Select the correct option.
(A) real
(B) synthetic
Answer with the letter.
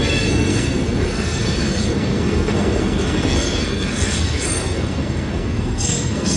B